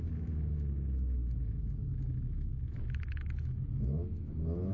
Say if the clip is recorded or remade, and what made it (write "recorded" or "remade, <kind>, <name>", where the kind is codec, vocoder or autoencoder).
remade, autoencoder, DAC-VAE